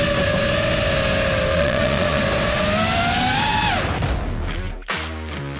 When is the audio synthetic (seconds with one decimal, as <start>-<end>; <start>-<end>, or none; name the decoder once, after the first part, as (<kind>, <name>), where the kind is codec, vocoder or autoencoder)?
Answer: 1.5-2.2 (vocoder, Vocos)